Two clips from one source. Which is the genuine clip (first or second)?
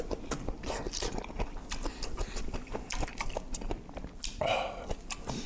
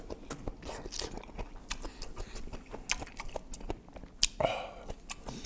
second